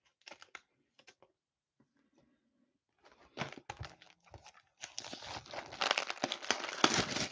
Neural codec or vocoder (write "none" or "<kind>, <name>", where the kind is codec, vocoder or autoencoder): none